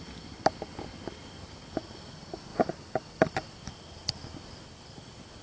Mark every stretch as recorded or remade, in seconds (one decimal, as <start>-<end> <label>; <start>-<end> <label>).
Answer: 0.0-5.4 recorded